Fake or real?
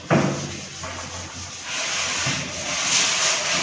real